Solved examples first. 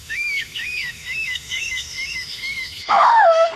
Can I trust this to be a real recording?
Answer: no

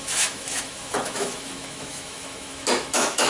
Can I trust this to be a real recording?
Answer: no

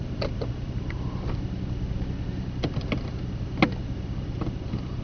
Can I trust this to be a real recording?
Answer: yes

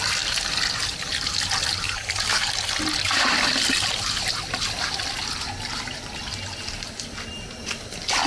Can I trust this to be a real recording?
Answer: yes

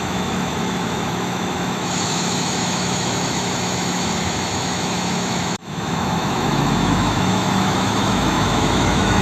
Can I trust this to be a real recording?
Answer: no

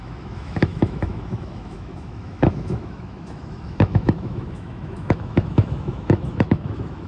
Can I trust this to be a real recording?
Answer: no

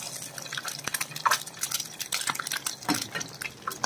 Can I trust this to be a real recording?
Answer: yes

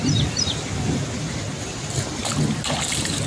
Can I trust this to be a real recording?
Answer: yes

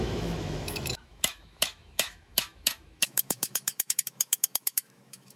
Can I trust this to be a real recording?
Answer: no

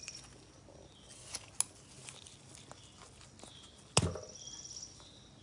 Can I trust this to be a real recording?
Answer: yes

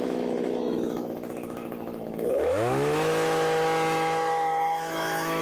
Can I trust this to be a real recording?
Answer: no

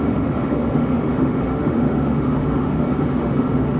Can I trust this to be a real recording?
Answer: no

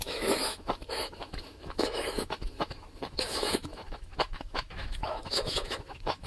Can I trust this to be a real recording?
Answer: no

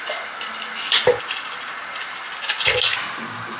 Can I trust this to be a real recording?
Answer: yes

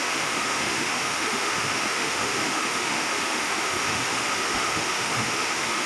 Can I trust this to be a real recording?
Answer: no